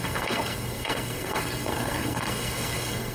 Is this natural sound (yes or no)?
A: no